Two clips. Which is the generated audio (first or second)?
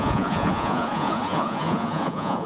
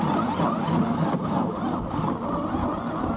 first